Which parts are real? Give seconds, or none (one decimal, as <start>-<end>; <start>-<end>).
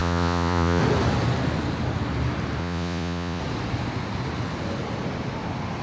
0.8-2.6; 3.4-5.8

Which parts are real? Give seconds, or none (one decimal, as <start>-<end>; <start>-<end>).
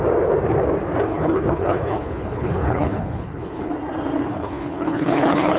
0.0-1.1; 3.7-4.3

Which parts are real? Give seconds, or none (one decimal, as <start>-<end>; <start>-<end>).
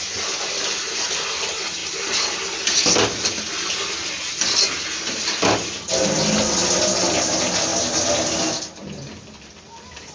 0.0-10.1